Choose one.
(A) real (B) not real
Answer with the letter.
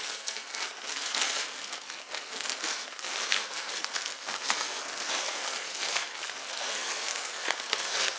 B